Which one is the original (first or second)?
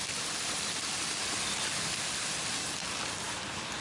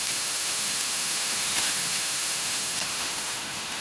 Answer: first